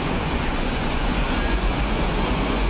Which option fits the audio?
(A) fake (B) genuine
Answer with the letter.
A